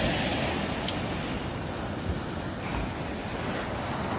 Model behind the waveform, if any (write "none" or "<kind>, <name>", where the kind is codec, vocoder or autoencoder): none